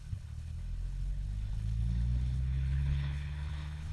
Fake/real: fake